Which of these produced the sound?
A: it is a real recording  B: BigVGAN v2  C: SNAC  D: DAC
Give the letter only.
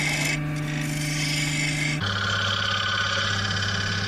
A